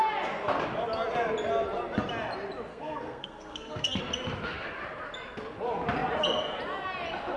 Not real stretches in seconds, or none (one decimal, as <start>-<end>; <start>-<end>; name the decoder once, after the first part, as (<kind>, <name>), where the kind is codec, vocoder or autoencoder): 2.7-4.0 (codec, SNAC)